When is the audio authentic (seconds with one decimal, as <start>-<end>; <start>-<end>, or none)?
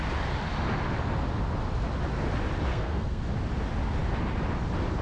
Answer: 0.0-2.7; 3.2-5.0